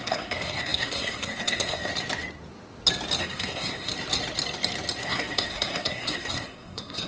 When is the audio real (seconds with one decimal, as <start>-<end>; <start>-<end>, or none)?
1.9-3.2; 3.9-5.0